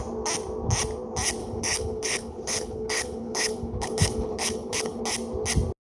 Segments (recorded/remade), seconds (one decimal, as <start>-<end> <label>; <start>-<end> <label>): 0.0-1.4 recorded; 1.4-5.0 remade; 5.0-6.0 recorded